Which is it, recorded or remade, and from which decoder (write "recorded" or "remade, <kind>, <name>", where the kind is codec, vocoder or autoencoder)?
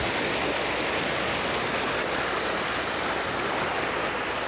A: recorded